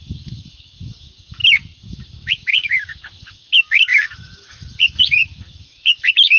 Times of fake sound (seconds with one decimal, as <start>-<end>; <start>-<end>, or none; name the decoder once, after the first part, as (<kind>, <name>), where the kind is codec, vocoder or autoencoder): 0.0-6.4 (autoencoder, DAC-VAE)